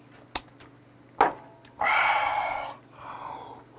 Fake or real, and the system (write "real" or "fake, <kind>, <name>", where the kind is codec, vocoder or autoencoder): real